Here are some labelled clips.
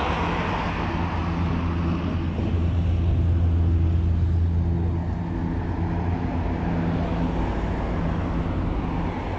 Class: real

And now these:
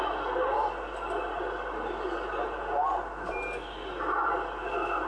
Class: real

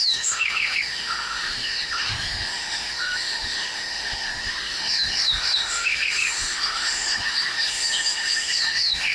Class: fake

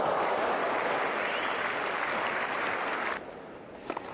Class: real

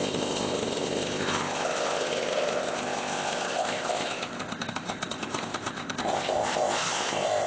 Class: fake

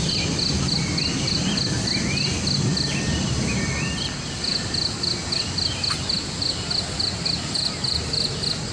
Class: real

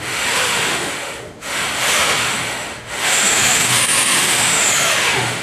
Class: fake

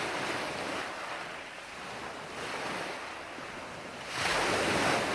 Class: real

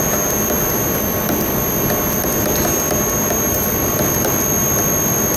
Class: real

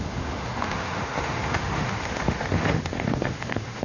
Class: fake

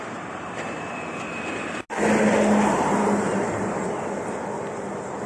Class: real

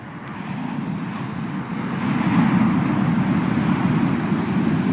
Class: real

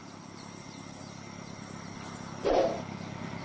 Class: real